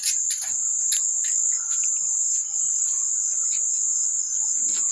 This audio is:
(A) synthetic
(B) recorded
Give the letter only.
B